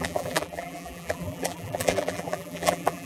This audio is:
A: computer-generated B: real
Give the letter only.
A